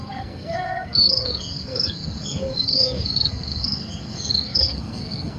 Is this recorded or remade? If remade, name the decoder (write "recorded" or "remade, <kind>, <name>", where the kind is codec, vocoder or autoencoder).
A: remade, codec, SNAC